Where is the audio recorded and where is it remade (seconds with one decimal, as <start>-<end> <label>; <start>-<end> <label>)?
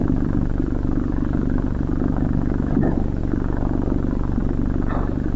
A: 0.0-3.2 remade; 3.2-4.4 recorded; 4.4-5.4 remade